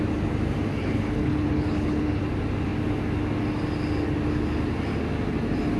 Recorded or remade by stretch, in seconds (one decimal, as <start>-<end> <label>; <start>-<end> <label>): 0.0-0.8 recorded; 0.8-2.2 remade; 2.2-5.8 recorded